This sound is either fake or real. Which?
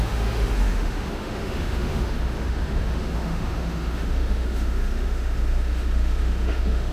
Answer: fake